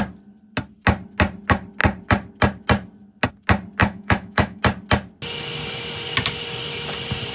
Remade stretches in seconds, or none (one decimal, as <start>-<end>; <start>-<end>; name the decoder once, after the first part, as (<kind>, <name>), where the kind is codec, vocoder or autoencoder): 3.8-4.6 (autoencoder, DAC-VAE)